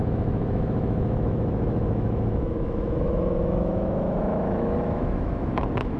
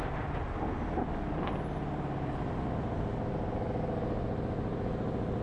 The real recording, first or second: second